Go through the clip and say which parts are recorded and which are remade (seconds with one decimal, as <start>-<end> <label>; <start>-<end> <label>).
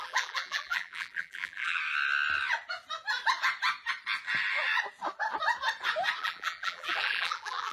0.0-1.8 remade; 1.8-6.2 recorded; 6.2-7.7 remade